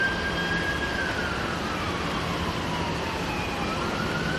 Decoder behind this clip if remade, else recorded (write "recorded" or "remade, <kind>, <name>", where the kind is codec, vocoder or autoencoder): recorded